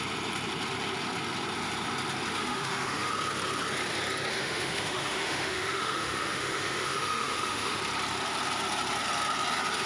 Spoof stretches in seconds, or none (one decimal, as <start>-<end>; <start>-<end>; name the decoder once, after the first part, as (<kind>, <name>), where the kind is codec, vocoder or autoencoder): 2.4-3.1 (autoencoder, DAC-VAE); 4.3-7.8